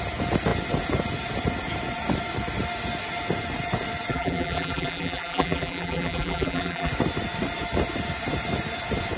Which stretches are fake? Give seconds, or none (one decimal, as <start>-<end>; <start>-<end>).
4.1-6.9